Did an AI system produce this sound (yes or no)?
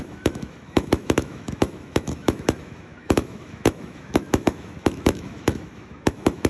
yes